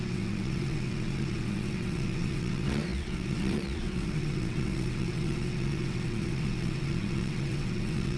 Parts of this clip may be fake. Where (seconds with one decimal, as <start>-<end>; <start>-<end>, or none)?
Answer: 0.0-8.2